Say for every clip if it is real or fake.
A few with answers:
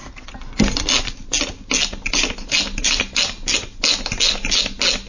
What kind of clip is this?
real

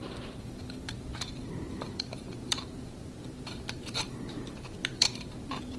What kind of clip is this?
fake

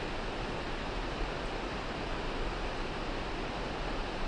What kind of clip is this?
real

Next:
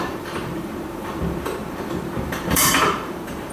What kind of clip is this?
fake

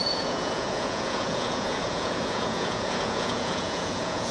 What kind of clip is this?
fake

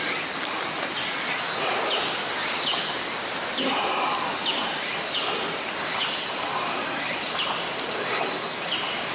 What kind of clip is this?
real